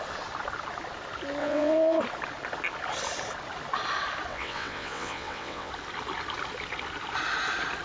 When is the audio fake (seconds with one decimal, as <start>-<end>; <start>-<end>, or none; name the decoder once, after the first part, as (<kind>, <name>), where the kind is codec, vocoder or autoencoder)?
1.4-2.0 (vocoder, WaveNeXt); 4.3-5.7